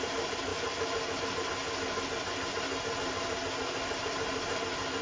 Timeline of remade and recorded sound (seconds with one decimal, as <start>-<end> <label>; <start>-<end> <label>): 0.0-5.0 recorded